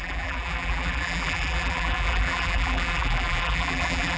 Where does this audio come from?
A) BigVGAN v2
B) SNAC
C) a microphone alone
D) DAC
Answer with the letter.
A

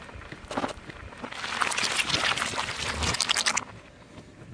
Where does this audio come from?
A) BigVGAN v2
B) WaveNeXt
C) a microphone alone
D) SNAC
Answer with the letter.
C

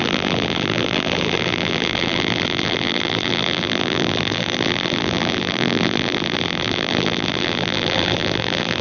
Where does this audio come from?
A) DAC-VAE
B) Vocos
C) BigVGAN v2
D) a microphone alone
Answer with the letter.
C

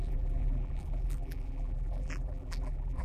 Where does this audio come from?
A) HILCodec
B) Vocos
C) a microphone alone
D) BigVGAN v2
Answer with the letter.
D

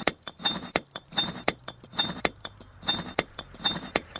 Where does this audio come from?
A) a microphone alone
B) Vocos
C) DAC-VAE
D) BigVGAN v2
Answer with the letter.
D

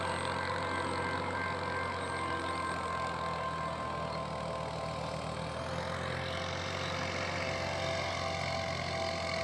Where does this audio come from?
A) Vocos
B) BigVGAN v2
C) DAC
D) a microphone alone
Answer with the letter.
D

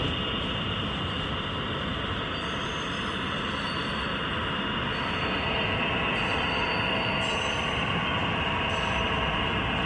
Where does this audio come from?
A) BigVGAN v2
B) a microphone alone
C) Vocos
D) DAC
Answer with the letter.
B